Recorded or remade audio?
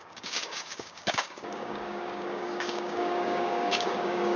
remade